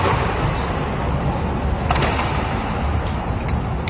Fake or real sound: real